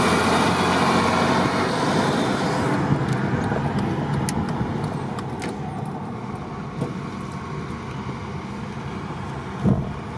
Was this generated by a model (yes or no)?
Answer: no